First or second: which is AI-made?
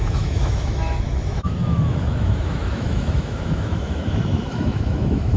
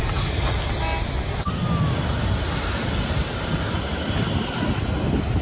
first